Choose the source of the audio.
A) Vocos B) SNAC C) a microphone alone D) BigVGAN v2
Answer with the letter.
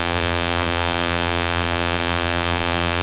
D